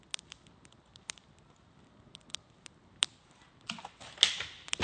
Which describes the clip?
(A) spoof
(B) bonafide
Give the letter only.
B